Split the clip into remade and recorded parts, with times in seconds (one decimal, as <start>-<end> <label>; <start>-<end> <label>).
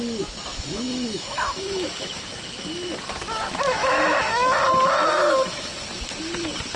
0.0-0.5 recorded; 0.5-2.9 remade; 2.9-3.8 recorded; 3.8-4.6 remade; 4.6-5.0 recorded; 5.0-5.7 remade; 5.7-6.8 recorded